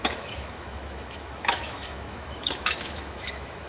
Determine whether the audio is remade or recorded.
remade